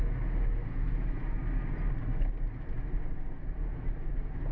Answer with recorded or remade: recorded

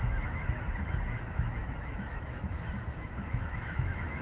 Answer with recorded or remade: remade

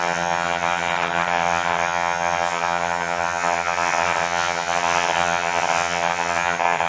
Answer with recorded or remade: remade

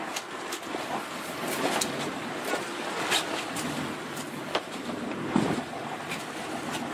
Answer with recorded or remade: remade